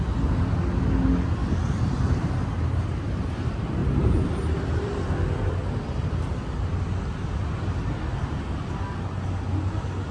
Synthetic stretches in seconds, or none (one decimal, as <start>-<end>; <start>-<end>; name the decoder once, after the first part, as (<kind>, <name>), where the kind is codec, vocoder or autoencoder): 1.4-2.3 (vocoder, BigVGAN v2); 3.8-5.0; 5.6-6.1